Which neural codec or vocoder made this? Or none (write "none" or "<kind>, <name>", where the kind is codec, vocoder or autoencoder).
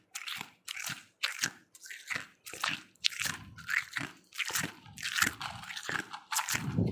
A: vocoder, BigVGAN v2